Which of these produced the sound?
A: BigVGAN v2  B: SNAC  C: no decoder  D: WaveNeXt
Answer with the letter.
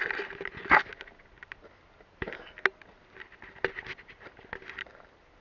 C